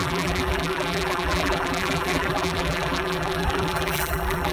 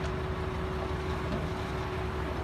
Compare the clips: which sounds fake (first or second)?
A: first